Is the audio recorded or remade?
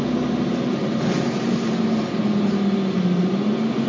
recorded